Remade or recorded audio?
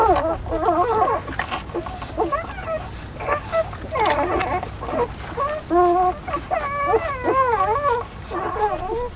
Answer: recorded